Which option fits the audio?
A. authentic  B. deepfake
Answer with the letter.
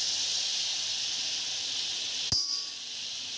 A